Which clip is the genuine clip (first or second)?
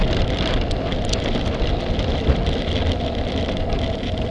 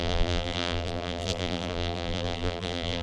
first